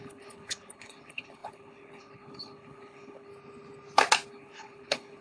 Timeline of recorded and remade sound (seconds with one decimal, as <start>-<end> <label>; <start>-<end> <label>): 0.0-3.3 remade; 3.3-4.3 recorded; 4.3-5.2 remade